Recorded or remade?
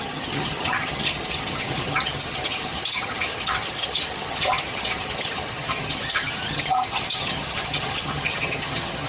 remade